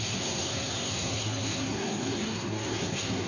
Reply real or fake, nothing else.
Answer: fake